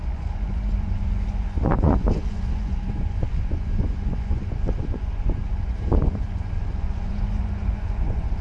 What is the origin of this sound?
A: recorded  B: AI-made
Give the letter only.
B